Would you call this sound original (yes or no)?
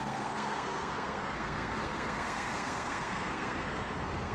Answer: no